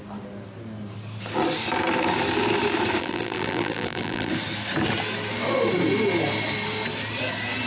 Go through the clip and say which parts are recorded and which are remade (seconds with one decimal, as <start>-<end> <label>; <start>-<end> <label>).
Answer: 0.0-3.0 recorded; 3.0-4.3 remade; 4.3-7.7 recorded